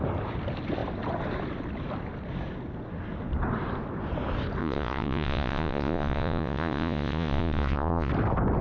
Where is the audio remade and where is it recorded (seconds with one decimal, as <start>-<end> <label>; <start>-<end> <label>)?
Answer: 0.0-4.6 recorded; 4.6-8.1 remade; 8.1-8.6 recorded